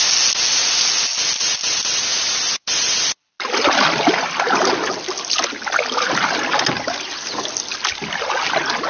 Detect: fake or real real